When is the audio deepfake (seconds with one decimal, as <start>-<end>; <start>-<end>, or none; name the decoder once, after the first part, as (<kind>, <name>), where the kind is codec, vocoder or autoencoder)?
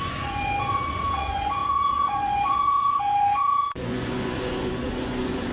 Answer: 0.0-5.5 (vocoder, Vocos)